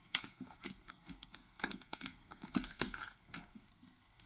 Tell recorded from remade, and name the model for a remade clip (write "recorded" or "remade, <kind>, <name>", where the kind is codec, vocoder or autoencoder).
remade, codec, SNAC